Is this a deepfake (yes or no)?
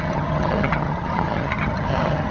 yes